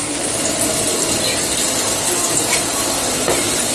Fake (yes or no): no